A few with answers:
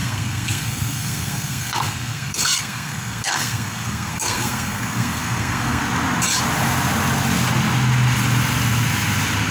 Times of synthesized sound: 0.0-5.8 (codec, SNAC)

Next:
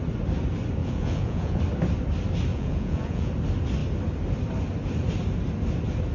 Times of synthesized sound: 0.8-1.6 (vocoder, Vocos); 2.5-3.3

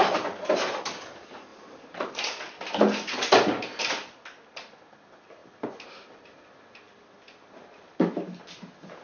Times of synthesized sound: none